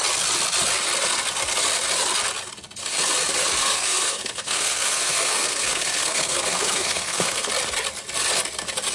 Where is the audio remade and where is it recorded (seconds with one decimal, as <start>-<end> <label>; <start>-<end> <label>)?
0.0-3.6 recorded; 3.6-7.5 remade; 7.5-8.9 recorded